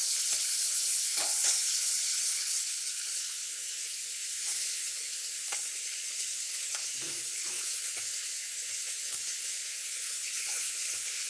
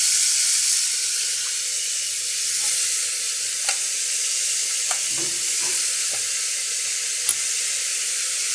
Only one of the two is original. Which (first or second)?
second